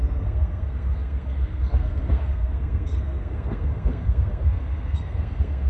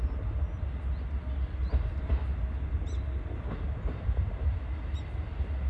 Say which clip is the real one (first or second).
second